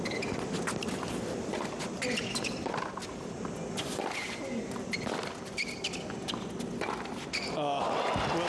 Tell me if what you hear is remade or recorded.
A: recorded